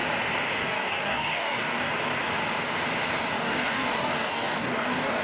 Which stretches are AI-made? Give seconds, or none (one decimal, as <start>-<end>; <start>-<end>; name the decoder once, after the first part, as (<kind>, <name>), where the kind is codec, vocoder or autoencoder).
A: 0.6-1.9 (codec, DAC); 3.3-5.2

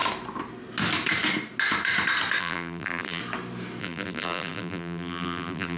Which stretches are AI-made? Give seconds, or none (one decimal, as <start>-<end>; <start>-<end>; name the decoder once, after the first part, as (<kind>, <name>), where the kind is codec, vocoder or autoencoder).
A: 2.4-3.2 (vocoder, BigVGAN v2); 3.8-5.8

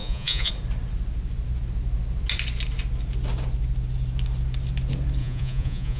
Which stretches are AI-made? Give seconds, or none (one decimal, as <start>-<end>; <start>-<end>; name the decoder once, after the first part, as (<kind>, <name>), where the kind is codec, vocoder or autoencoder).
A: 0.0-0.5 (vocoder, Vocos); 5.2-6.0